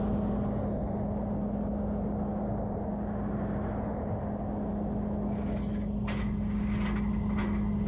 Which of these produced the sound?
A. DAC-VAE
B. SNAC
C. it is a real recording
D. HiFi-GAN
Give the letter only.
C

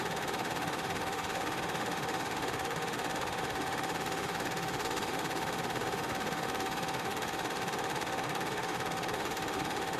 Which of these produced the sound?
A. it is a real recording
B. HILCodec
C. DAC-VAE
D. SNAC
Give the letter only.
C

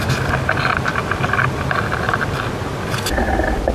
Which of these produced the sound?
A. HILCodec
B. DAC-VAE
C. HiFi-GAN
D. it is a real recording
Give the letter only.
D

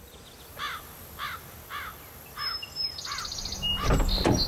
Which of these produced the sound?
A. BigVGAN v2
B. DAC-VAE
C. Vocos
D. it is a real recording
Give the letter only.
D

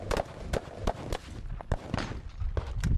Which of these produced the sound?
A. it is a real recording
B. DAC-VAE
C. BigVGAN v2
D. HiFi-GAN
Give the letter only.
A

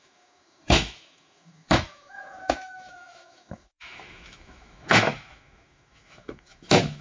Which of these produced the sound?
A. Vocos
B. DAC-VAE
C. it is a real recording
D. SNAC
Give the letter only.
B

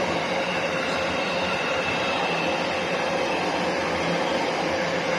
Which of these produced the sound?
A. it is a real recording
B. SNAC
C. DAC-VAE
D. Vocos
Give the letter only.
A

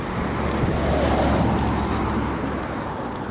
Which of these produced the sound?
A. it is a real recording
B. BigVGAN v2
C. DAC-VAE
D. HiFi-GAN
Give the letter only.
A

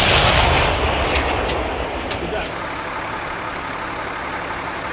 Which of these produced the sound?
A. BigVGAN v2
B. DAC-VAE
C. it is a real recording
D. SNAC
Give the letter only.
C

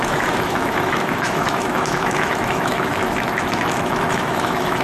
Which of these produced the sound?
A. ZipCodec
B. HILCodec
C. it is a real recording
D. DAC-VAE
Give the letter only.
D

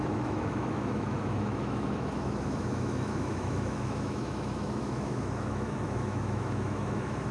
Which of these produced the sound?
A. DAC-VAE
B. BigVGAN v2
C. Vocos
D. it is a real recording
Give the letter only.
A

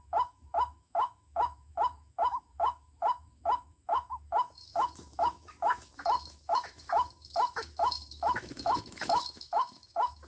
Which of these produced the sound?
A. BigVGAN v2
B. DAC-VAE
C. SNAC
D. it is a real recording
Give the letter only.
B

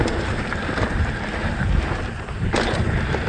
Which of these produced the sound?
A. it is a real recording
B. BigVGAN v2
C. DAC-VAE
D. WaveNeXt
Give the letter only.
A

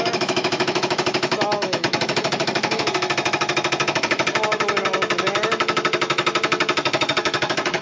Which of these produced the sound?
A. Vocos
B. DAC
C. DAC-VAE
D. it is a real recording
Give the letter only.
C